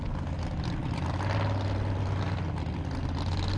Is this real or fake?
real